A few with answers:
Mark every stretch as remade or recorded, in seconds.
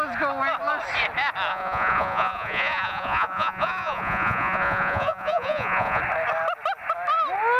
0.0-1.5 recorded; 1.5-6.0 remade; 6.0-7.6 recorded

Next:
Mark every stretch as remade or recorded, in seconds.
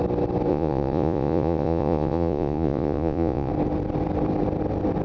0.0-0.5 recorded; 0.5-3.5 remade; 3.5-5.0 recorded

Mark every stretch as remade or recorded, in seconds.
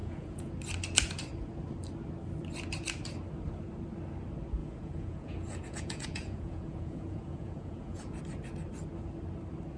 0.0-0.5 remade; 0.5-4.6 recorded; 4.6-8.2 remade; 8.2-9.8 recorded